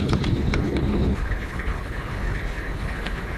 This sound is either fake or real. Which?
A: fake